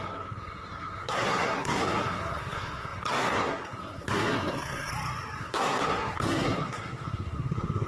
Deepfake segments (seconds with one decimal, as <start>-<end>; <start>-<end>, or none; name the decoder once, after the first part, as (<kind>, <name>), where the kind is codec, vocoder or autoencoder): 0.0-4.9 (codec, SNAC); 5.4-7.9